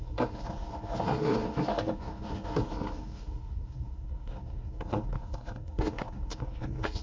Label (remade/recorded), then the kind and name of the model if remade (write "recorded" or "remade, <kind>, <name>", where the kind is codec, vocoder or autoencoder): remade, codec, SNAC